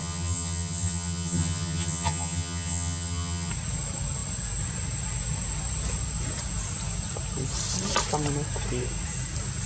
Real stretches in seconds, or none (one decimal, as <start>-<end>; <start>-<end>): 3.5-9.7